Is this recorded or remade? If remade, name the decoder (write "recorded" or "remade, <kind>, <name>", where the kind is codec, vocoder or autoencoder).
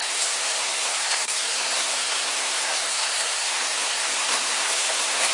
remade, codec, SNAC